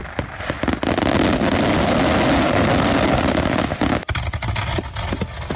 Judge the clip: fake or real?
real